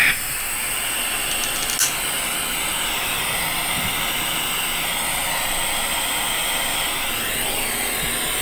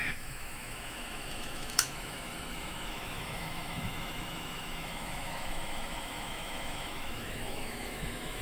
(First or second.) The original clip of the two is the first